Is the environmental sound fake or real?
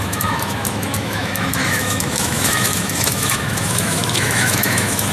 fake